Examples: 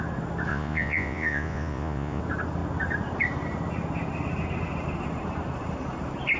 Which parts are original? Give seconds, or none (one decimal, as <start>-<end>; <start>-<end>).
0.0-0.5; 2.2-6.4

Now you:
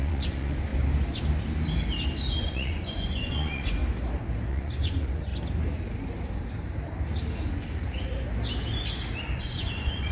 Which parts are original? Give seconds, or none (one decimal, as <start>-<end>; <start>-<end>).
0.7-2.3; 3.8-4.5; 5.3-9.4

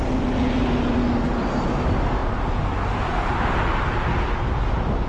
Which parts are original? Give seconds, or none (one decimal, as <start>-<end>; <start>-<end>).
0.0-5.1

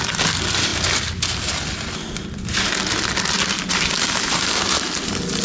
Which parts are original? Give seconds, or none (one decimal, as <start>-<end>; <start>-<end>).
0.0-5.4

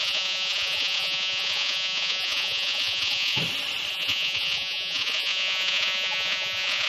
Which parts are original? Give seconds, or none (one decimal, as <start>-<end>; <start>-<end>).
3.4-3.9